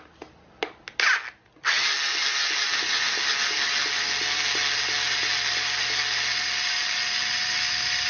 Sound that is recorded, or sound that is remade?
recorded